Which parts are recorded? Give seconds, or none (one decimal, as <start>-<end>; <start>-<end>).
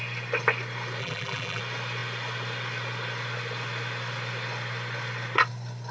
0.0-1.0; 1.6-5.9